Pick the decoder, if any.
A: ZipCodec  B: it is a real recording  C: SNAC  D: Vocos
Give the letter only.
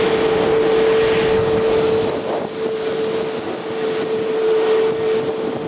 B